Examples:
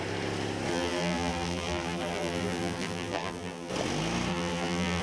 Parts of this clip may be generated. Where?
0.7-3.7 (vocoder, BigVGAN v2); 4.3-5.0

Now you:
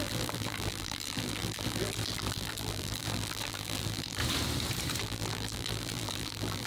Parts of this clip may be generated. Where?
0.0-4.2 (vocoder, BigVGAN v2); 5.0-6.7

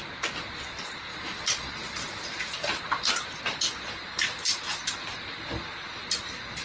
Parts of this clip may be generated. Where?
1.1-3.1 (vocoder, BigVGAN v2)

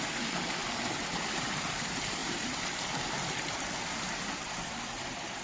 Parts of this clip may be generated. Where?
0.0-0.6 (vocoder, BigVGAN v2); 1.4-5.4

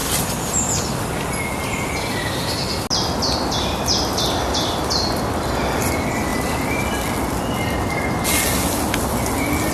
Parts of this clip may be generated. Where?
none

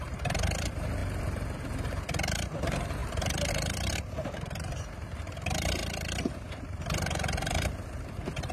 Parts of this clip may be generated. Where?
0.0-5.8 (vocoder, BigVGAN v2); 6.3-8.5

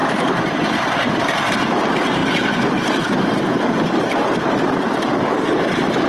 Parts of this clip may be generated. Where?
0.0-1.5 (vocoder, BigVGAN v2); 2.2-4.9

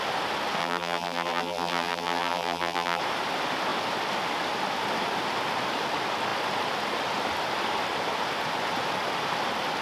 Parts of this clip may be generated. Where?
0.6-3.0 (vocoder, BigVGAN v2)